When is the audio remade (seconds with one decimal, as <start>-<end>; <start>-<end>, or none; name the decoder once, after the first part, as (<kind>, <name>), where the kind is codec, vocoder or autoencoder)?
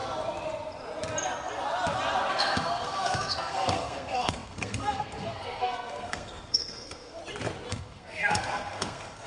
2.3-7.2 (codec, SNAC); 7.7-9.3